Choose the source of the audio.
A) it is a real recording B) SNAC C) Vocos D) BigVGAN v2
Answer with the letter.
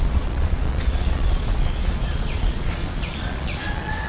C